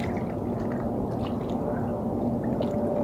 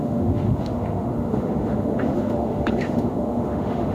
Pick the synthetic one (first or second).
second